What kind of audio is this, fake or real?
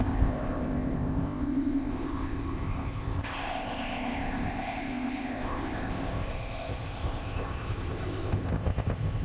fake